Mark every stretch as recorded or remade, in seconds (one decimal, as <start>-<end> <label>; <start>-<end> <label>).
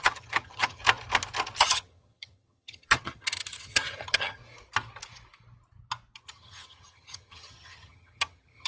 0.0-0.8 remade; 0.8-1.6 recorded; 1.6-4.4 remade; 4.4-6.2 recorded; 6.2-8.7 remade